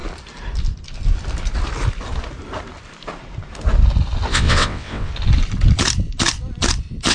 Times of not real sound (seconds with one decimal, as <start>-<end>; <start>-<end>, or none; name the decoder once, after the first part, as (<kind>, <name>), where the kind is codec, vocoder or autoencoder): 4.3-5.1 (vocoder, WaveNeXt)